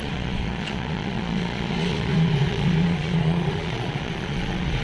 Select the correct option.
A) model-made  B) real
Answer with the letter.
A